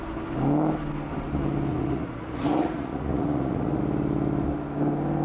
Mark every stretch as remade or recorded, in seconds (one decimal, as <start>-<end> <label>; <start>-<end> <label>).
0.0-1.7 recorded; 1.7-3.8 remade; 3.8-5.2 recorded